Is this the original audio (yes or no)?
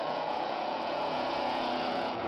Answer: no